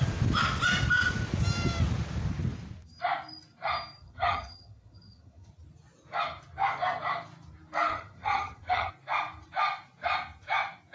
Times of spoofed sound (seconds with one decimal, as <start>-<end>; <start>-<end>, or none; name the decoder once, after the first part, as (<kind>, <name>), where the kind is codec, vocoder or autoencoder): 4.0-5.5 (vocoder, HiFi-GAN); 7.9-8.9